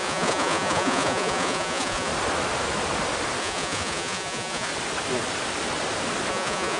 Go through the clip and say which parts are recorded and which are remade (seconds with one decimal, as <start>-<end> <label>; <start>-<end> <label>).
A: 0.0-2.1 remade; 2.1-3.4 recorded; 3.4-4.7 remade; 4.7-6.3 recorded; 6.3-6.8 remade